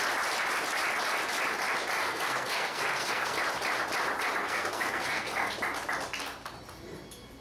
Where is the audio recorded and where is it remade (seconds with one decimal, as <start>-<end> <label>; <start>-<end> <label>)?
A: 0.0-2.0 recorded; 2.0-3.4 remade; 3.4-4.4 recorded; 4.4-5.5 remade; 5.5-7.4 recorded